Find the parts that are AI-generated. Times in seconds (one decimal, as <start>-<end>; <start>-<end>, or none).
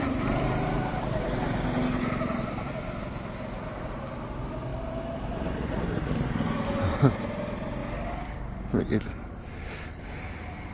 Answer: none